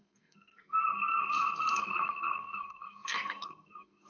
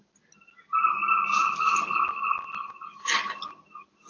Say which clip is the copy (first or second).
first